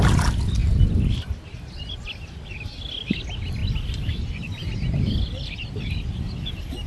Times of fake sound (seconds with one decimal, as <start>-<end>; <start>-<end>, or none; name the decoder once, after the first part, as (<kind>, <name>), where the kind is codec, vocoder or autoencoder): none

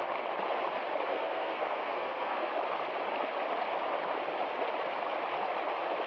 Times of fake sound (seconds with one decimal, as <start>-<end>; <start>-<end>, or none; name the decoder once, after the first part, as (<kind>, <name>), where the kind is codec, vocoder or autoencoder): 1.1-2.5 (codec, SNAC)

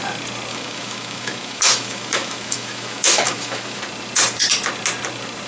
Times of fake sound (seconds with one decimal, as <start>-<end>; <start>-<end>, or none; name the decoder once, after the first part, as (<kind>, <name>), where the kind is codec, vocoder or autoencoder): 0.5-3.8 (autoencoder, DAC-VAE)

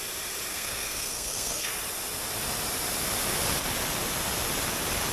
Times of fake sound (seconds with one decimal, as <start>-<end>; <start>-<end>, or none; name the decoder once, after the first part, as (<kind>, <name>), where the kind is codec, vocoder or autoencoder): 0.5-1.7 (codec, SNAC)

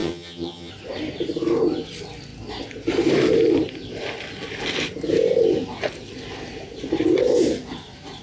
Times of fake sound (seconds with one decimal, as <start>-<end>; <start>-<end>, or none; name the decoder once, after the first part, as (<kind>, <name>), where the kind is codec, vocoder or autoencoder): 0.0-0.7 (vocoder, HiFi-GAN)

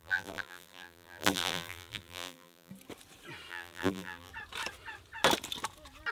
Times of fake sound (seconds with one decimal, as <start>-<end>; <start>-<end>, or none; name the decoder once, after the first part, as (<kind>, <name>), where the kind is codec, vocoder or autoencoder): 0.0-2.7 (vocoder, BigVGAN v2); 3.5-4.3